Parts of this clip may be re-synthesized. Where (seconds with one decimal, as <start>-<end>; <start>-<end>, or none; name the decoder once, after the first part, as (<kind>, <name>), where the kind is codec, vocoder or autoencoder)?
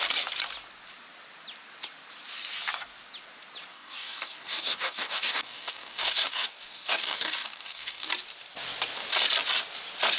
3.7-8.1 (codec, DAC)